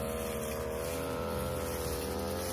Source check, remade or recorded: recorded